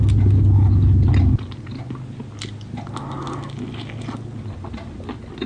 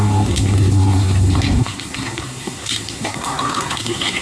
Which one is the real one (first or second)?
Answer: first